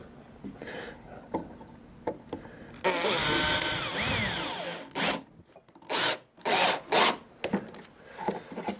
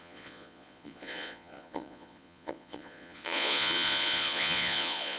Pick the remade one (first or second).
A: second